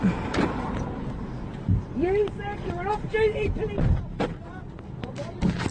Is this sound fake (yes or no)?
no